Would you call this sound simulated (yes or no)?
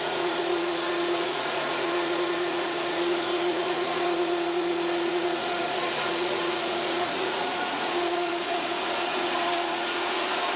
yes